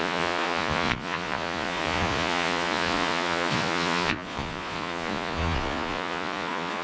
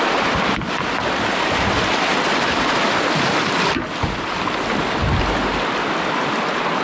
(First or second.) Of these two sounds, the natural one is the second